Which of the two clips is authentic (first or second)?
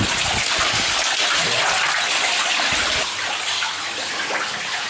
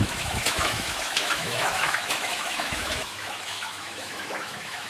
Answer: first